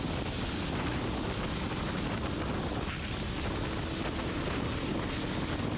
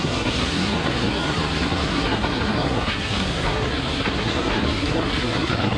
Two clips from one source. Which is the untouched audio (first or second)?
first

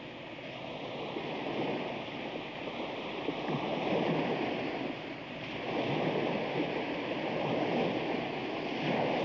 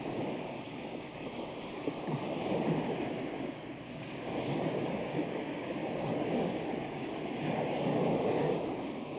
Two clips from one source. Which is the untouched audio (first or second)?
first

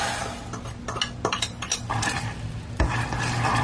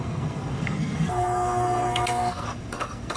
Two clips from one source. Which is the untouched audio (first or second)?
first